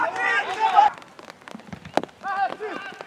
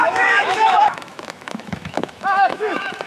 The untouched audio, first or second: first